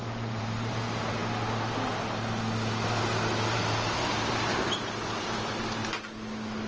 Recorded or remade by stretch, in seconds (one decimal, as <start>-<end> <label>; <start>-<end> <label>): 0.0-1.2 remade; 1.2-3.4 recorded; 3.4-5.8 remade; 5.8-6.7 recorded